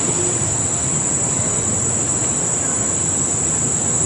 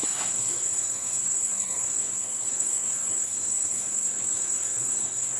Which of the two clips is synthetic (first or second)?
second